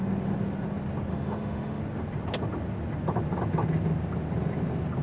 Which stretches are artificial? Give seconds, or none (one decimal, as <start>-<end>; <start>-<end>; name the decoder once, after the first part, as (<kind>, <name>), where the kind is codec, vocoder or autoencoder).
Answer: 1.1-1.8 (autoencoder, DAC-VAE)

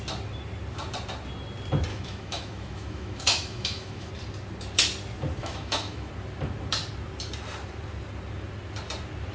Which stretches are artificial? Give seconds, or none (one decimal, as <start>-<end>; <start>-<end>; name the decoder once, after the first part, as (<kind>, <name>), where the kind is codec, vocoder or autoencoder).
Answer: 1.9-4.1 (autoencoder, DAC-VAE); 5.4-6.1

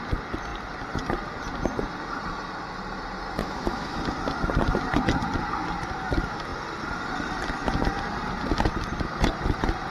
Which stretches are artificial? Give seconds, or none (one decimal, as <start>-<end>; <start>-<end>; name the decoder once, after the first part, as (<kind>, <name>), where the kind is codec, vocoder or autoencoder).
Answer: 3.4-4.0 (autoencoder, DAC-VAE)